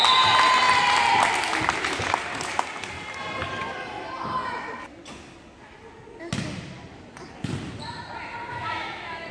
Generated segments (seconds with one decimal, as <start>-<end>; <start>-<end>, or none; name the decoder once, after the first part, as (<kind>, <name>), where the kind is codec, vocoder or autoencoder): 8.5-9.3 (autoencoder, DAC-VAE)